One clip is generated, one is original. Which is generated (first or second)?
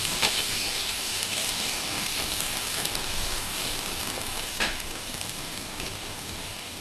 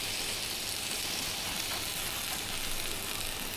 first